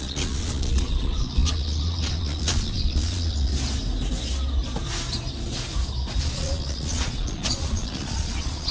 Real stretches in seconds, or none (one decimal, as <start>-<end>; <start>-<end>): 3.5-6.2